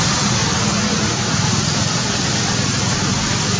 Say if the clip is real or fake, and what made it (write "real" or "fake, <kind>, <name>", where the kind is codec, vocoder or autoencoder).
real